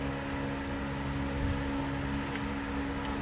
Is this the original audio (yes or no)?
yes